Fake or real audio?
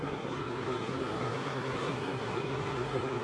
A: fake